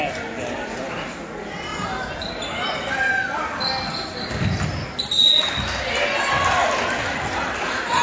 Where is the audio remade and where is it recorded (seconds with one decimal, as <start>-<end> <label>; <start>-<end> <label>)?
0.0-8.0 recorded